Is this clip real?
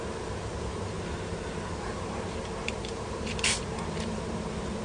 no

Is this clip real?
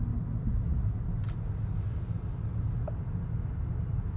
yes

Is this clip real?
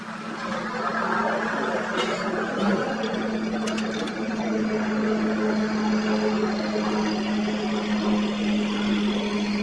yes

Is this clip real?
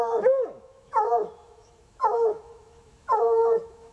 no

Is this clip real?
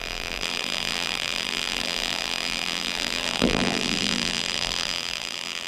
no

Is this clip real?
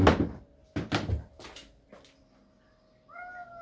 yes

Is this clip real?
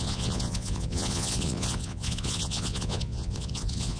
no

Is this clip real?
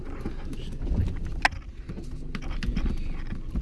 yes